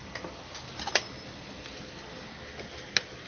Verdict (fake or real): real